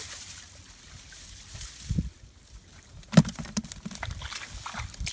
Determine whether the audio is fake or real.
real